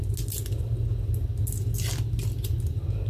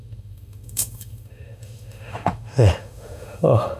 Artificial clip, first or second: second